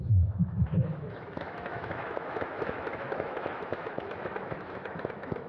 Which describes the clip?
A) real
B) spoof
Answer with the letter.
B